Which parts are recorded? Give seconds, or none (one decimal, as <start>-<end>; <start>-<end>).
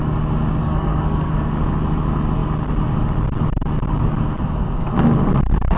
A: 0.0-0.6; 1.5-5.8